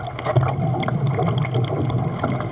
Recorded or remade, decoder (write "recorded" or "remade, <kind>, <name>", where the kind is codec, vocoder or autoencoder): recorded